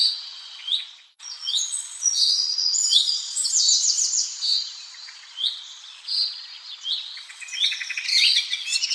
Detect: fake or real fake